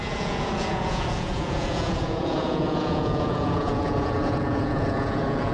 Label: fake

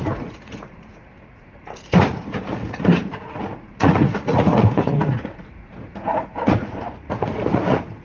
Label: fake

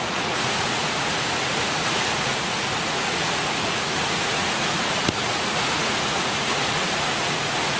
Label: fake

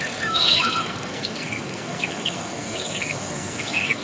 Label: fake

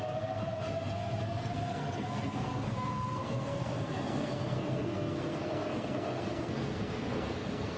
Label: fake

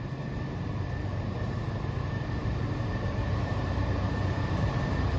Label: fake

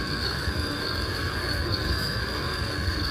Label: fake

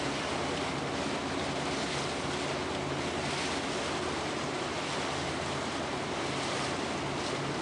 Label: real